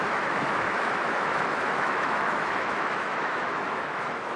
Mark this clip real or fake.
fake